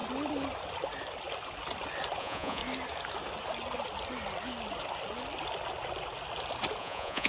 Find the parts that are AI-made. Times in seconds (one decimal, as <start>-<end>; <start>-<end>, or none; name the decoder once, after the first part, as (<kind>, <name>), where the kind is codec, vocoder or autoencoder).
2.2-2.6 (vocoder, Vocos); 6.8-7.3